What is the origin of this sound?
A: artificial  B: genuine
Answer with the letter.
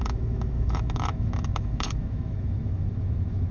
A